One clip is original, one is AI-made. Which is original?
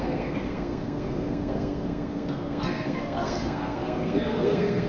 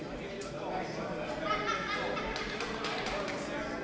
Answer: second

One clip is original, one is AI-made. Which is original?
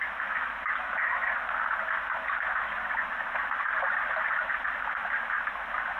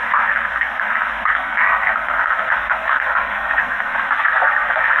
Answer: first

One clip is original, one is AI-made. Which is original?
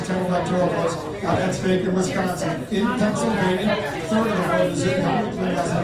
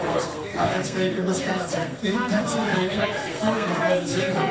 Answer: first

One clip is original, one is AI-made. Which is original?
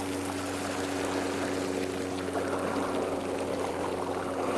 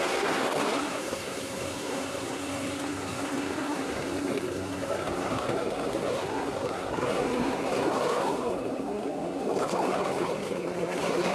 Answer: first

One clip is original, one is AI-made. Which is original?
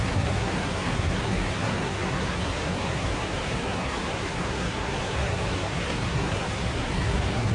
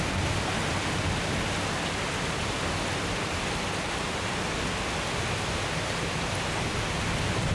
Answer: second